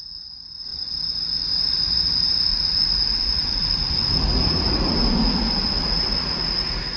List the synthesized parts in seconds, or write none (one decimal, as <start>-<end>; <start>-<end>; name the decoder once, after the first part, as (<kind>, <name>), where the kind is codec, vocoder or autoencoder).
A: 2.5-7.0 (vocoder, Vocos)